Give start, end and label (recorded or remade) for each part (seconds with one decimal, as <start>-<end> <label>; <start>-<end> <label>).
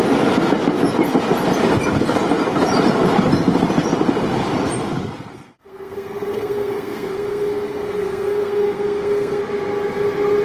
0.0-5.3 recorded; 5.3-9.4 remade; 9.4-10.4 recorded